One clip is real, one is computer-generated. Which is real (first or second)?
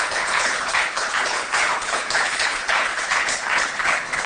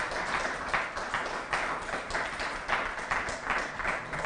second